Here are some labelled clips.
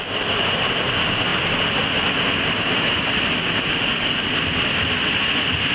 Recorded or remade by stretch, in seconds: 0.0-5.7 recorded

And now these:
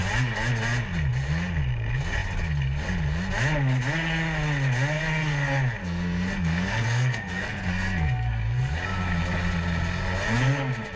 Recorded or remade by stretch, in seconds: 0.0-5.8 recorded; 5.8-8.7 remade; 8.7-11.0 recorded